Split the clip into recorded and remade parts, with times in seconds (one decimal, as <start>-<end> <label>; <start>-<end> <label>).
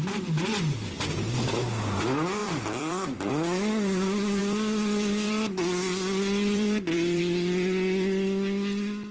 0.0-2.4 recorded; 2.4-3.3 remade; 3.3-4.4 recorded; 4.4-7.2 remade; 7.2-9.1 recorded